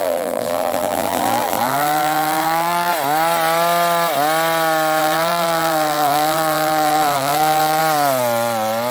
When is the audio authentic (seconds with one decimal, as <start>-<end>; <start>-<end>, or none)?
2.9-5.0; 7.8-8.9